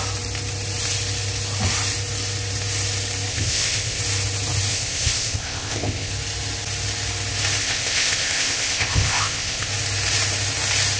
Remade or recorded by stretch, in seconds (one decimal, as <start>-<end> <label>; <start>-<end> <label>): 0.0-3.3 recorded; 3.3-4.0 remade; 4.0-4.7 recorded; 4.7-6.1 remade; 6.1-7.6 recorded; 7.6-9.7 remade; 9.7-11.0 recorded